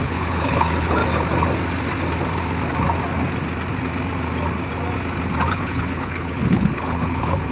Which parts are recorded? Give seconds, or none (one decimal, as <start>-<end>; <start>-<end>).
1.0-5.5